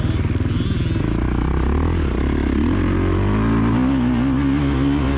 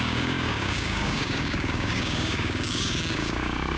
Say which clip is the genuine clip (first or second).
first